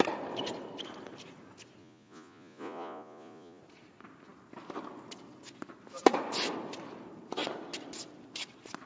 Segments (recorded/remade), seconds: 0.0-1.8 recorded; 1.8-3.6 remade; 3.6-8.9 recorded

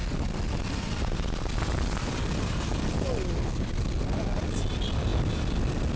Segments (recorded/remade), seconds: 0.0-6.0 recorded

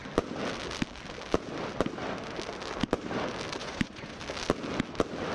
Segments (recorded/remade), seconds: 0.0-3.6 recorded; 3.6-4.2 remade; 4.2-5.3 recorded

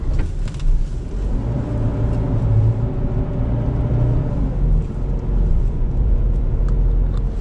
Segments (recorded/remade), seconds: 0.0-5.5 recorded; 5.5-6.6 remade; 6.6-7.4 recorded

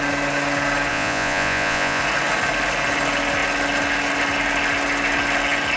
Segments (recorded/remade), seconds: 0.0-0.9 recorded; 0.9-2.0 remade; 2.0-5.8 recorded

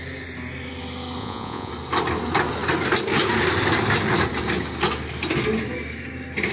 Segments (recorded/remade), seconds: 0.0-1.2 recorded; 1.2-1.7 remade; 1.7-6.5 recorded